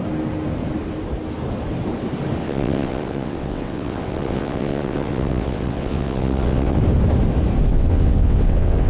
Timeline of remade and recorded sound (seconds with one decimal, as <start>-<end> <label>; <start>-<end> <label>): 0.0-2.4 recorded; 2.4-6.8 remade; 6.8-7.7 recorded; 7.7-8.9 remade